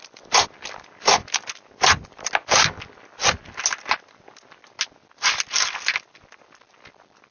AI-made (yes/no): no